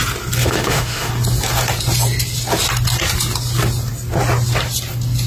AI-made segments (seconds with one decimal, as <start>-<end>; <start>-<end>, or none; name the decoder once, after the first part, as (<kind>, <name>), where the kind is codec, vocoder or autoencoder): 0.4-1.1 (autoencoder, DAC-VAE)